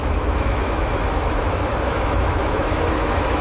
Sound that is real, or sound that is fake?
fake